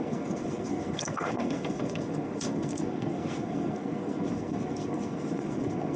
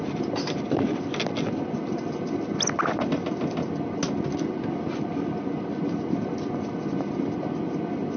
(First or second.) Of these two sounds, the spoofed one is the first